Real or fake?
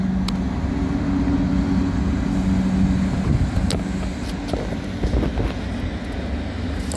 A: real